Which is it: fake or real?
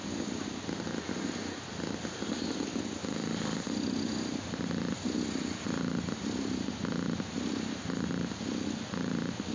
real